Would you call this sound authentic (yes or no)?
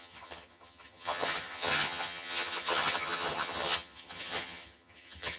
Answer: no